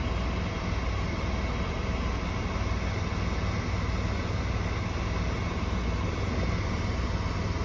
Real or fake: real